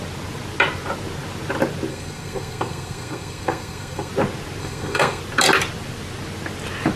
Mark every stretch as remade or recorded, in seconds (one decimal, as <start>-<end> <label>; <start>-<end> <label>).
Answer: 0.0-1.9 recorded; 1.9-4.1 remade; 4.1-4.6 recorded; 4.6-5.2 remade; 5.2-7.0 recorded